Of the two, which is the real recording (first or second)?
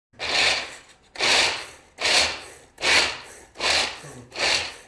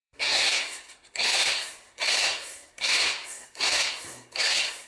first